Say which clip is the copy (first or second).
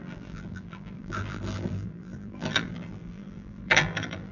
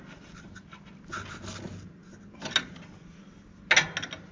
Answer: first